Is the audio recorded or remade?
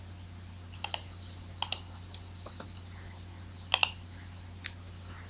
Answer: recorded